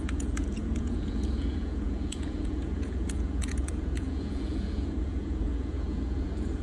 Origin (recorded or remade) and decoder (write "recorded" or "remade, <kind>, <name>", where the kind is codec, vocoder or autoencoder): remade, vocoder, Vocos